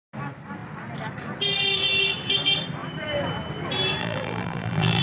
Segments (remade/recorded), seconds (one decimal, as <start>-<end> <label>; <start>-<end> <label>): 0.0-4.0 recorded; 4.0-5.0 remade